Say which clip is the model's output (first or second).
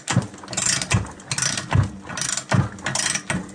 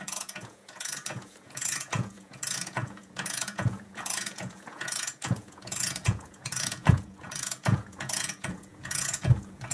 second